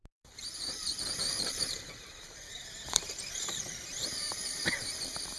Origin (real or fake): fake